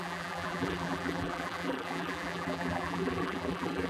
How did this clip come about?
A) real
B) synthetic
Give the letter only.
B